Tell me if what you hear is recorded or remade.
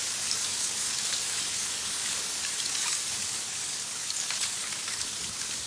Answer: remade